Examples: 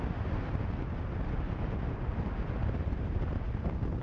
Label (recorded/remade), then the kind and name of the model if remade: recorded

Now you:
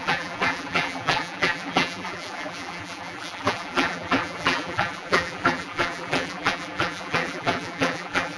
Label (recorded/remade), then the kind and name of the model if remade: remade, vocoder, BigVGAN v2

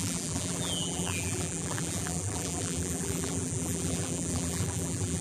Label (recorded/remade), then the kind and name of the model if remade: remade, vocoder, BigVGAN v2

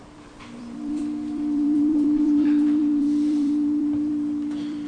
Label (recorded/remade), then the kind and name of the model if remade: remade, vocoder, BigVGAN v2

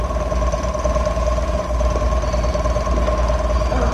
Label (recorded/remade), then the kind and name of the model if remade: recorded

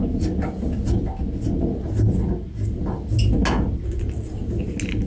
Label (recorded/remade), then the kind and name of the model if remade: recorded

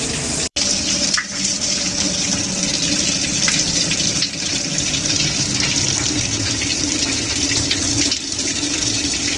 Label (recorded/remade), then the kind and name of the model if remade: remade, vocoder, BigVGAN v2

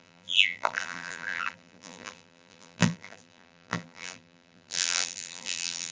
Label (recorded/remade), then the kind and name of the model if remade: remade, vocoder, BigVGAN v2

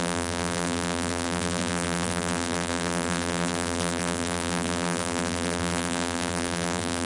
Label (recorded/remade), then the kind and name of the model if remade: remade, vocoder, BigVGAN v2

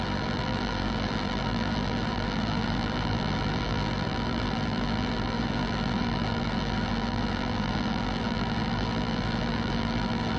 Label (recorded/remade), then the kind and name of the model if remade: remade, vocoder, BigVGAN v2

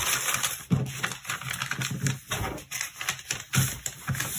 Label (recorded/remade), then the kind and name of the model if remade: recorded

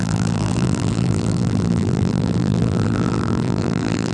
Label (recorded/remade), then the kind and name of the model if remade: remade, vocoder, BigVGAN v2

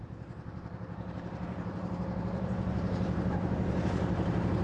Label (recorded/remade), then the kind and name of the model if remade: remade, vocoder, BigVGAN v2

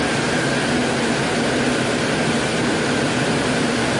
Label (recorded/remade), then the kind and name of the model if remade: recorded